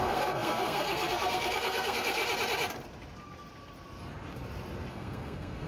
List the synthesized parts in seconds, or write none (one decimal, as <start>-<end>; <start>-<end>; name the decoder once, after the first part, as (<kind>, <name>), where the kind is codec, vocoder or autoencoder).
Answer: 0.0-2.2 (codec, SNAC); 4.9-5.7